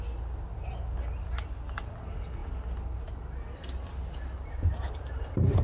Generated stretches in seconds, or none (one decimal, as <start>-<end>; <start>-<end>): none